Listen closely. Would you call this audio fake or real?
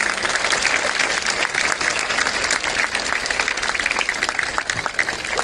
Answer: real